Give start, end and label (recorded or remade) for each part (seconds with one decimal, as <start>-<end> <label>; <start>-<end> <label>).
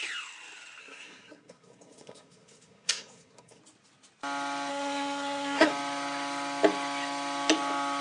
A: 0.0-0.8 recorded; 0.8-3.6 remade; 3.6-4.7 recorded; 4.7-5.7 remade; 5.7-8.0 recorded